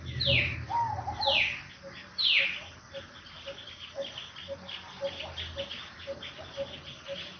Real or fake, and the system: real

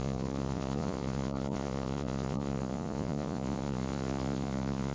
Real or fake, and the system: fake, vocoder, Vocos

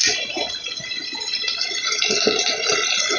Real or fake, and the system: real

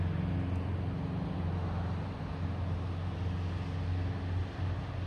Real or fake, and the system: real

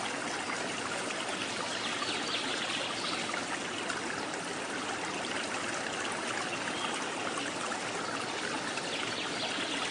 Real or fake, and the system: real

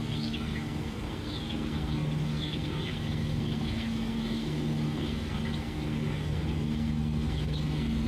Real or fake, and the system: fake, codec, SNAC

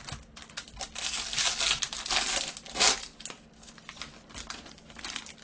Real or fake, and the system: real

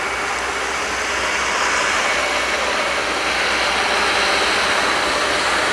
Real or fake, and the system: real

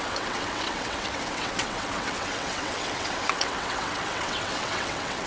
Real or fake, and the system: fake, vocoder, WaveNeXt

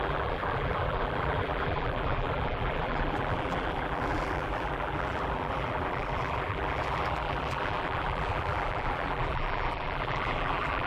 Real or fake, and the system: fake, vocoder, BigVGAN v2